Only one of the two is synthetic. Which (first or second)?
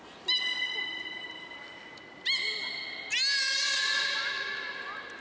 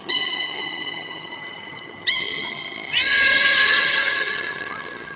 second